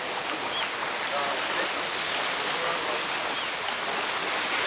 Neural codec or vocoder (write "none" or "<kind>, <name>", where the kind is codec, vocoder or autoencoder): none